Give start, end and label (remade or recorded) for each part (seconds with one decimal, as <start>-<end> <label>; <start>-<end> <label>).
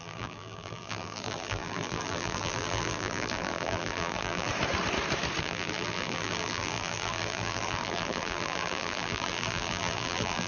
0.0-4.5 remade; 4.5-5.4 recorded; 5.4-10.5 remade